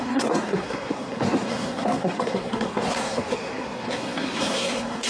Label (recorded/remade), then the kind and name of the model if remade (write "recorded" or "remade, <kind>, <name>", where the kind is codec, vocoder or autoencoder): remade, codec, SNAC